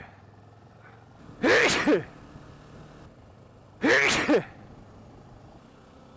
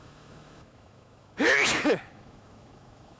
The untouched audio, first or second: first